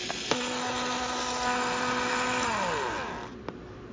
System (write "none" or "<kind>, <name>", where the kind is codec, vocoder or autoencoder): none